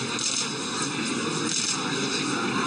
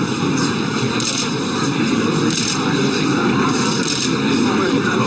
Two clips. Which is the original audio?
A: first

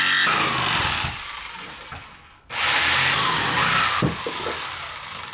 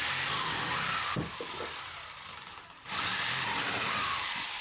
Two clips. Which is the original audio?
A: first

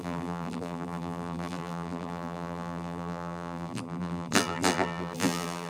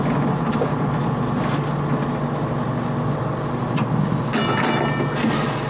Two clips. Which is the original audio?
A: second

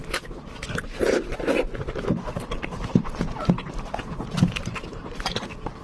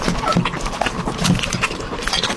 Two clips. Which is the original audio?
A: second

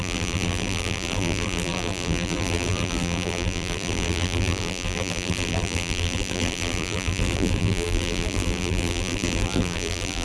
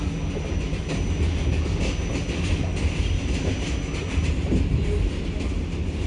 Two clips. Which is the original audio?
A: second